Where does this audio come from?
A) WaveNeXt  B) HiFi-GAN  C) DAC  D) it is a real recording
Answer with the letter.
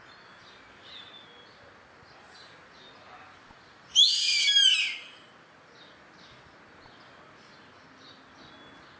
D